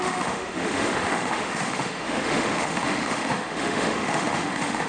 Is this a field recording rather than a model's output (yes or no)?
no